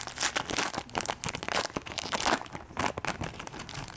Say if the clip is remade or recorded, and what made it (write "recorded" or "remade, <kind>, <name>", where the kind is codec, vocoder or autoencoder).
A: recorded